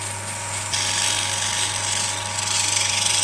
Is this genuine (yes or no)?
yes